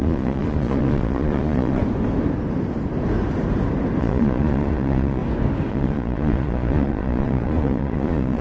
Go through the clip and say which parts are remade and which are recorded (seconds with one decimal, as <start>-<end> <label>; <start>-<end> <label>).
0.0-1.8 remade; 1.8-4.0 recorded; 4.0-5.2 remade; 5.2-5.7 recorded; 5.7-8.4 remade